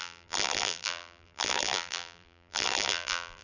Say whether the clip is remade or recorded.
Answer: remade